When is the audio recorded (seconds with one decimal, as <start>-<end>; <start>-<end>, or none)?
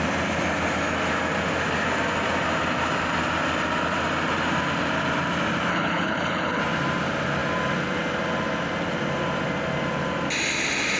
0.0-5.7; 6.6-11.0